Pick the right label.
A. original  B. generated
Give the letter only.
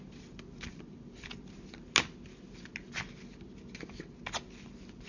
A